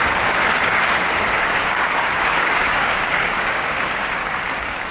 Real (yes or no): no